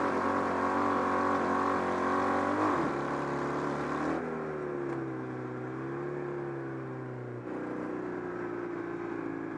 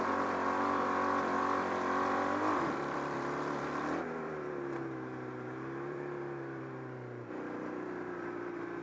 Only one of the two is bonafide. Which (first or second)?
first